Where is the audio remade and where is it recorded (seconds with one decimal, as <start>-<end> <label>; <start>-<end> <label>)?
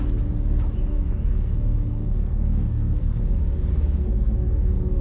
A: 0.0-0.9 recorded; 0.9-3.2 remade; 3.2-3.7 recorded; 3.7-5.0 remade